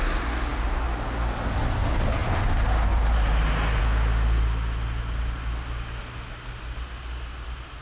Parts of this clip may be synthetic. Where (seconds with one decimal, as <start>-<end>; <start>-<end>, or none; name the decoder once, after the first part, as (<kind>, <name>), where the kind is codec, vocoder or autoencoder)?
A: none